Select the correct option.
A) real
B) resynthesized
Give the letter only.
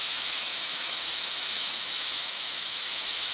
B